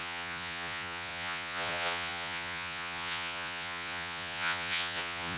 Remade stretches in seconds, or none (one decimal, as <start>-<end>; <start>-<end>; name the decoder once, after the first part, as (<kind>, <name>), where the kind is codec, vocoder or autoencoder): 0.0-5.4 (vocoder, Vocos)